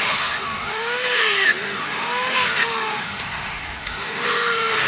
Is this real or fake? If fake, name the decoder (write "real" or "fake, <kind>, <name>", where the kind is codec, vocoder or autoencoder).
fake, autoencoder, DAC-VAE